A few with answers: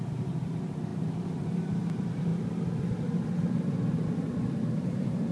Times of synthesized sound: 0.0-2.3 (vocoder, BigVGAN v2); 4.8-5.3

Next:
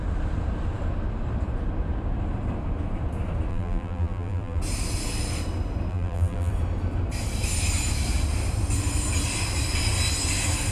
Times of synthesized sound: 3.5-4.6 (vocoder, BigVGAN v2); 5.9-6.5

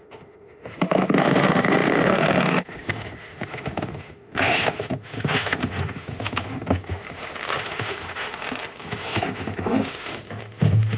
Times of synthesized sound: 0.0-11.0 (autoencoder, DAC-VAE)

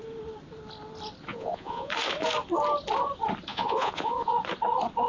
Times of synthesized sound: 1.3-1.9 (vocoder, Vocos); 3.5-4.3

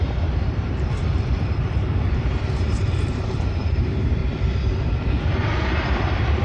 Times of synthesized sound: 0.0-4.2 (vocoder, BigVGAN v2); 5.0-6.4

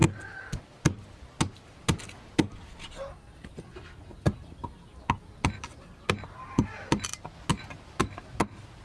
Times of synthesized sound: none

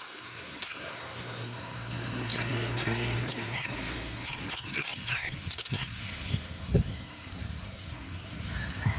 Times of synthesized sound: 0.0-9.0 (codec, SNAC)